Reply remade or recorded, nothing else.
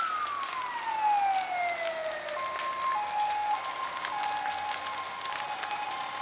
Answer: recorded